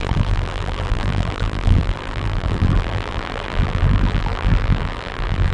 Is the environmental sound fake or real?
fake